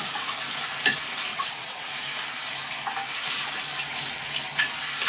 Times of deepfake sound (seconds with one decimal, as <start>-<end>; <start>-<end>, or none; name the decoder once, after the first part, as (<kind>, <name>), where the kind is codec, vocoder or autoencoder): 1.3-1.9 (vocoder, WaveNeXt)